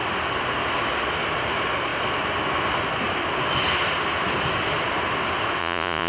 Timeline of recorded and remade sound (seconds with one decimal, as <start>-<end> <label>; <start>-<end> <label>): 0.0-5.6 recorded; 5.6-6.1 remade